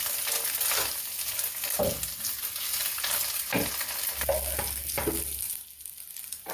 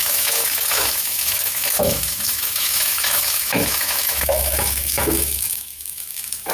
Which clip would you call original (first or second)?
first